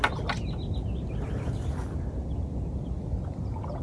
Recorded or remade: recorded